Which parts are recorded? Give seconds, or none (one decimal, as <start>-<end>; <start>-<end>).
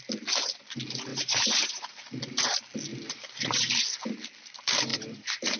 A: 0.0-1.1; 2.2-2.9; 3.7-4.9